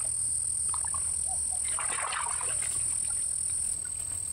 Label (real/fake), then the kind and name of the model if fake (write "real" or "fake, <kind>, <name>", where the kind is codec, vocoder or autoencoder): real